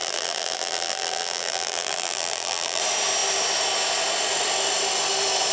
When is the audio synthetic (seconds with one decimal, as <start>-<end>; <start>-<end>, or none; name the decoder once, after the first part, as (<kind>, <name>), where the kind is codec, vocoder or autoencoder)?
0.0-2.8 (vocoder, BigVGAN v2)